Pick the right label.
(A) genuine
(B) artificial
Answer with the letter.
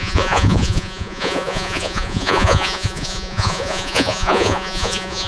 B